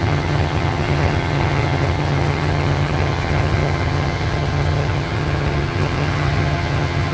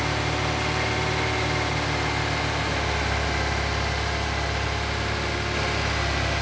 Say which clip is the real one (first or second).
second